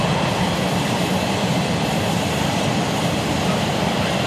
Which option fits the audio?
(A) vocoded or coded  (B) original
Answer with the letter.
A